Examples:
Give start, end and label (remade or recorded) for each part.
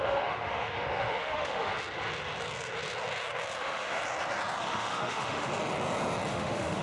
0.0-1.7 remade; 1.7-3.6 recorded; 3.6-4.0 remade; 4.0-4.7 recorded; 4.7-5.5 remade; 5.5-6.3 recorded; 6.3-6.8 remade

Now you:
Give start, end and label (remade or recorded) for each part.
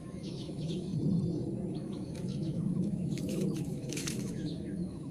0.0-0.9 remade; 0.9-1.7 recorded; 1.7-5.1 remade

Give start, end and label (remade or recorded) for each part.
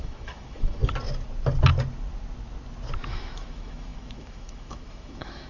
0.0-0.8 remade; 0.8-3.1 recorded; 3.1-5.5 remade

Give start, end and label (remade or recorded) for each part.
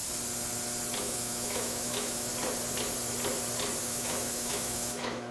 0.0-1.0 recorded; 1.0-2.3 remade; 2.3-3.8 recorded; 3.8-5.3 remade